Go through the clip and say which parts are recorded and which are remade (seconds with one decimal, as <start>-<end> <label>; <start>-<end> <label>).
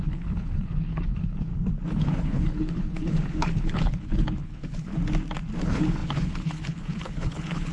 0.0-1.5 remade; 1.5-2.0 recorded; 2.0-4.9 remade; 4.9-5.6 recorded; 5.6-7.7 remade